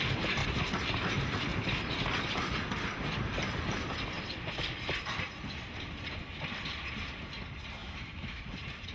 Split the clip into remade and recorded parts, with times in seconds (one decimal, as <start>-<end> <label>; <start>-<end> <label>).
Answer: 0.0-7.8 recorded; 7.8-8.4 remade; 8.4-8.9 recorded

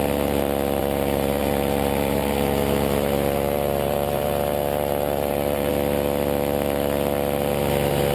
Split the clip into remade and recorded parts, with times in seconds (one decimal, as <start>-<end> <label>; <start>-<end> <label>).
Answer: 0.0-0.8 recorded; 0.8-5.7 remade; 5.7-8.1 recorded

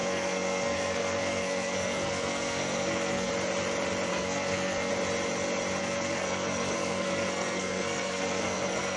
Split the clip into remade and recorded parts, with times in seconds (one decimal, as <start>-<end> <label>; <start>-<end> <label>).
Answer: 0.0-3.3 remade; 3.3-4.1 recorded; 4.1-4.9 remade; 4.9-5.8 recorded; 5.8-9.0 remade

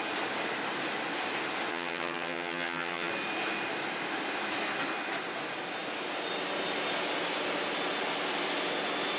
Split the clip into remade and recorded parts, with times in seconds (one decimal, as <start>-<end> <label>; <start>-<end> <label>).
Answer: 0.0-1.7 recorded; 1.7-3.1 remade; 3.1-9.2 recorded